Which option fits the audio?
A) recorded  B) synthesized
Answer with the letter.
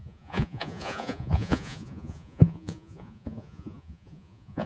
B